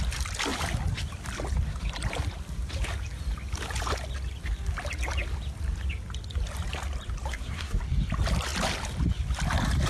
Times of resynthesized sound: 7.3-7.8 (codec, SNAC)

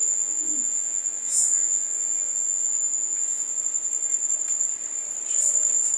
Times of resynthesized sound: 0.0-3.6 (vocoder, Vocos)

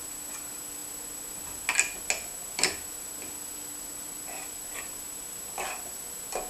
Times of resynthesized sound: none

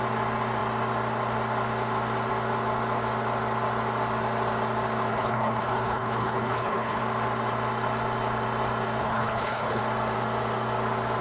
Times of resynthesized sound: 5.1-7.0 (codec, HILCodec); 9.0-9.8

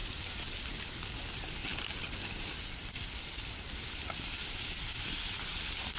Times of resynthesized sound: none